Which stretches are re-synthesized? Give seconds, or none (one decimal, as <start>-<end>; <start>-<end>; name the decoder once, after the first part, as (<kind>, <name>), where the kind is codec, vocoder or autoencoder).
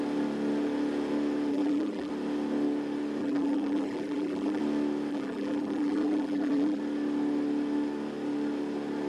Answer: 1.5-2.1 (vocoder, BigVGAN v2); 3.2-4.6; 5.1-6.8